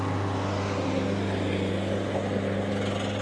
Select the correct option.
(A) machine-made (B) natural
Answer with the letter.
B